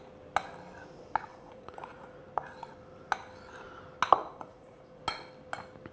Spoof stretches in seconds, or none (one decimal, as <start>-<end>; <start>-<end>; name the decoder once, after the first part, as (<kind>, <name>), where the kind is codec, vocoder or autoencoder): 1.3-2.2 (vocoder, Vocos); 4.2-5.0